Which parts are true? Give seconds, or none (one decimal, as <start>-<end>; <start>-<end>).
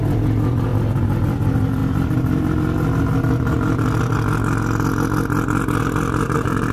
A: 0.7-1.2; 1.8-5.8